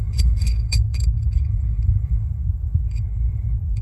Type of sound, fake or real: fake